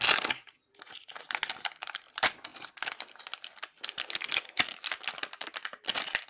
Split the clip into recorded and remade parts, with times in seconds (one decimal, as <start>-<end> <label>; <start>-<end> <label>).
0.0-6.3 recorded